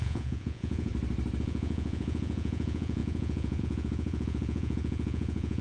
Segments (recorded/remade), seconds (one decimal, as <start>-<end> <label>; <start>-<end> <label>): 0.0-0.9 remade; 0.9-1.4 recorded; 1.4-5.6 remade